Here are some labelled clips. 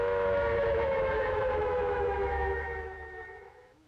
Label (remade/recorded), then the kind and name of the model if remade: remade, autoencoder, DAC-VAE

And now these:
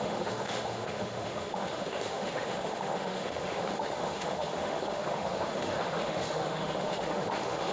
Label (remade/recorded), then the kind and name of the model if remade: remade, autoencoder, DAC-VAE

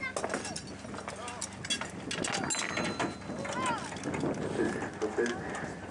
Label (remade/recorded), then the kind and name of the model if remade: recorded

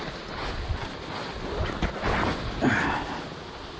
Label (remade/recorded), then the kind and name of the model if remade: recorded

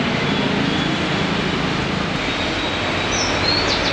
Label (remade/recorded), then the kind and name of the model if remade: recorded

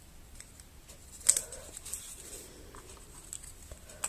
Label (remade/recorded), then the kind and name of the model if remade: recorded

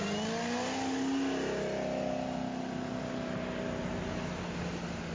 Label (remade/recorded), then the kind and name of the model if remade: recorded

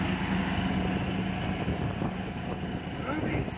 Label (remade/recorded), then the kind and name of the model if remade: recorded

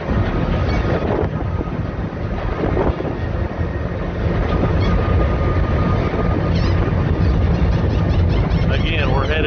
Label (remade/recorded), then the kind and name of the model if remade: recorded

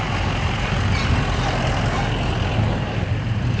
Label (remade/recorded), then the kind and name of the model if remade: recorded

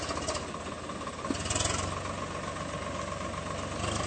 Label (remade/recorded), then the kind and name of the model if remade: recorded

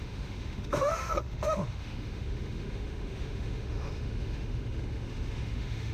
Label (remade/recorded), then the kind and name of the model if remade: remade, autoencoder, DAC-VAE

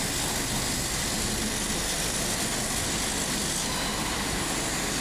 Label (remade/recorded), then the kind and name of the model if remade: recorded